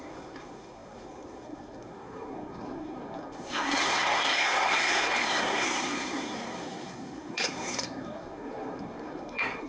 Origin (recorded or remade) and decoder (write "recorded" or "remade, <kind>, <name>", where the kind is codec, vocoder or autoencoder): remade, codec, SNAC